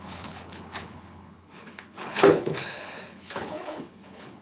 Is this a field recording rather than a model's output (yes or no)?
no